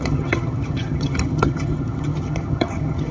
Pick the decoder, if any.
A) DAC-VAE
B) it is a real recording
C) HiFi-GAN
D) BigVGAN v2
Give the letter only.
C